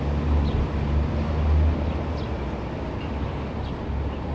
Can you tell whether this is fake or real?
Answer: real